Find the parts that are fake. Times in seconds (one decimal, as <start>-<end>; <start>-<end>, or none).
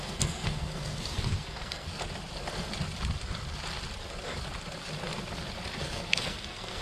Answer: 0.0-1.9; 5.8-6.8